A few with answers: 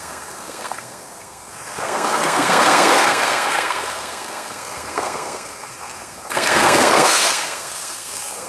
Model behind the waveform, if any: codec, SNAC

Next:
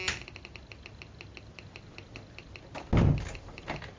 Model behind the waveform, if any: none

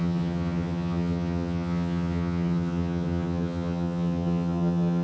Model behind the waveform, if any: vocoder, HiFi-GAN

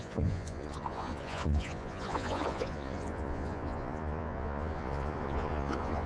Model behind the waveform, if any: vocoder, Vocos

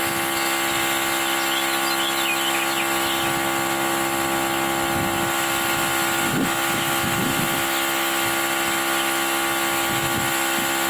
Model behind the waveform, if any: none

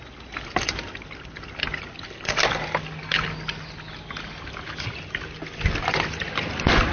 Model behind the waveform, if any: none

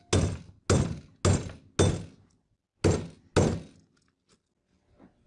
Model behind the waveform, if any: none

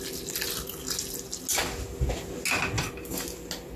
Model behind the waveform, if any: none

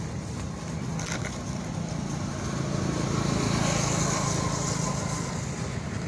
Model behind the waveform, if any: none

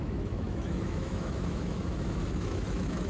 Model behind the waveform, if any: autoencoder, DAC-VAE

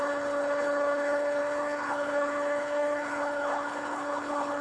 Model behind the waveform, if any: codec, HILCodec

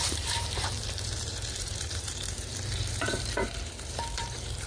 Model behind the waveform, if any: vocoder, BigVGAN v2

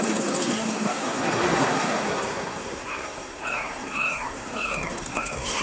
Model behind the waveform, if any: codec, SNAC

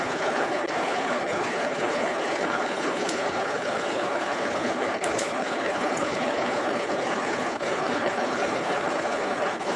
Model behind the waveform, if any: codec, HILCodec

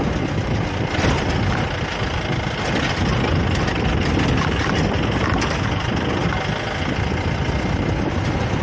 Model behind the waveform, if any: none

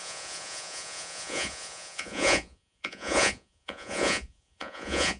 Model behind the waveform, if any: vocoder, Vocos